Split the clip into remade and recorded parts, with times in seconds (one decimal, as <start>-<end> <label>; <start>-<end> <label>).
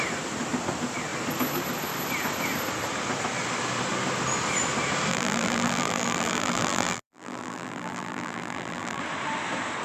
0.0-5.1 recorded; 5.1-9.0 remade; 9.0-9.8 recorded